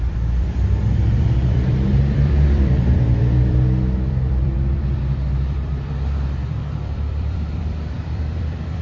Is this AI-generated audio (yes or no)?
yes